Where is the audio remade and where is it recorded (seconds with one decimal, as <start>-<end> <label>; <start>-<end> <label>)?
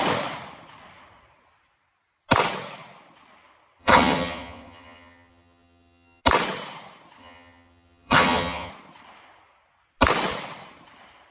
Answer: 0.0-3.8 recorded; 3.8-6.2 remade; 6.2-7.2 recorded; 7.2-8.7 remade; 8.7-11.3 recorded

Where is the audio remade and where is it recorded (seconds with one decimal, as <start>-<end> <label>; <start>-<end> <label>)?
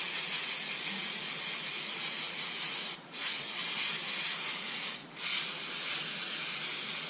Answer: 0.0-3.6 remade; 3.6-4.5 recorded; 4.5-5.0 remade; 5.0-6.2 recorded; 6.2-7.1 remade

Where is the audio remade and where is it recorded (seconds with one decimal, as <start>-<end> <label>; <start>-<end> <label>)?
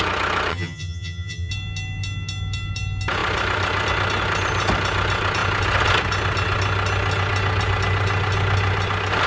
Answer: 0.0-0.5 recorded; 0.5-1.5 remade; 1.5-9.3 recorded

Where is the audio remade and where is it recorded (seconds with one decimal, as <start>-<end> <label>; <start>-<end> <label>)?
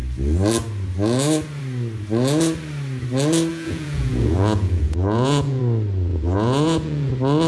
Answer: 0.0-3.5 recorded; 3.5-5.6 remade; 5.6-6.1 recorded; 6.1-7.1 remade; 7.1-7.5 recorded